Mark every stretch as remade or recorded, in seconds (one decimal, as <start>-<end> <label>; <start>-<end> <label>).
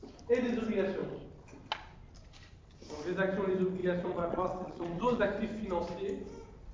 0.0-3.8 recorded; 3.8-5.2 remade; 5.2-6.7 recorded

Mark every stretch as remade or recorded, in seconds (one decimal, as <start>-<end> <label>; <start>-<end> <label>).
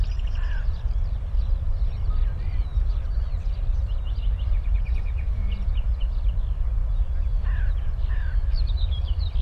0.0-2.7 remade; 2.7-4.4 recorded; 4.4-5.4 remade; 5.4-6.0 recorded; 6.0-6.8 remade; 6.8-8.1 recorded; 8.1-9.4 remade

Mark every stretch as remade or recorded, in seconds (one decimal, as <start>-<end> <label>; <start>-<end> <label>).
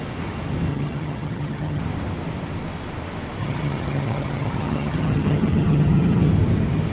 0.0-0.7 recorded; 0.7-1.8 remade; 1.8-3.4 recorded; 3.4-6.3 remade; 6.3-6.9 recorded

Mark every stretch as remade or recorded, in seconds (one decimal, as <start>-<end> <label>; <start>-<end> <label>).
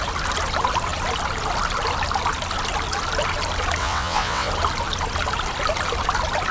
0.0-3.8 recorded; 3.8-4.5 remade; 4.5-6.5 recorded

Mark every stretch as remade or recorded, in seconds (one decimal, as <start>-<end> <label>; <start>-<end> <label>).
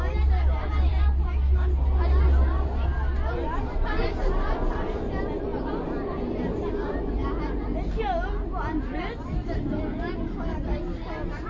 0.0-11.5 recorded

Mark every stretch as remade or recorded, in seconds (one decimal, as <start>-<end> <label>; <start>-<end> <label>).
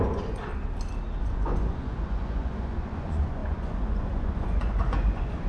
0.0-0.5 remade; 0.5-1.2 recorded; 1.2-5.5 remade